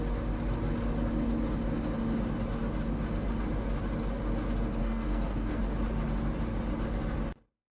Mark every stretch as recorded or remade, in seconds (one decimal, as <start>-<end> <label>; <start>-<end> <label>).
0.0-4.8 recorded; 4.8-5.6 remade; 5.6-7.7 recorded